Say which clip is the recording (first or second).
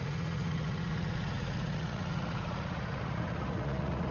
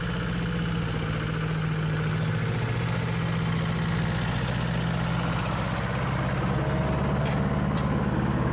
second